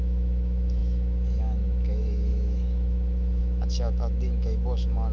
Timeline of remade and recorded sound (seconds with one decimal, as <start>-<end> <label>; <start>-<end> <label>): 0.0-5.1 remade